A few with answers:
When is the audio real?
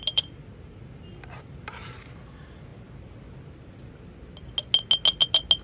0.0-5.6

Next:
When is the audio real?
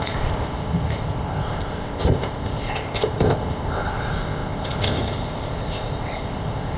none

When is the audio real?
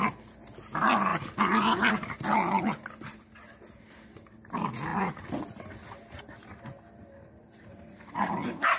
0.0-8.8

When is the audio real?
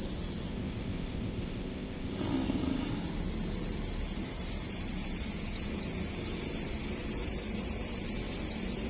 0.0-0.5; 2.1-8.9